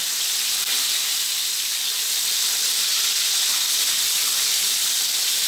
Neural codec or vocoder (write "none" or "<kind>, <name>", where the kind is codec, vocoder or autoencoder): none